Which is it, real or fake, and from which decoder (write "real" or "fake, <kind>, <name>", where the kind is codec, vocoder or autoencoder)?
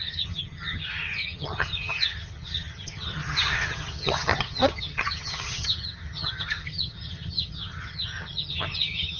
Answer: fake, vocoder, HiFi-GAN